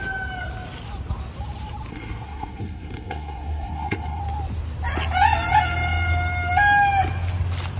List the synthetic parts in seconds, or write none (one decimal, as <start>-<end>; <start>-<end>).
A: 1.9-4.2